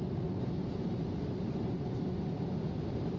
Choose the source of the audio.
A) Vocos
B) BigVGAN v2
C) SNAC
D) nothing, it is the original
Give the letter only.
D